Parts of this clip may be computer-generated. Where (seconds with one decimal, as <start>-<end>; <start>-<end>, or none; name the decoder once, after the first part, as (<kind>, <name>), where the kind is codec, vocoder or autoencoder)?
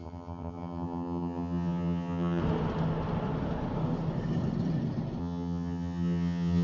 0.0-2.4 (vocoder, HiFi-GAN); 5.2-6.6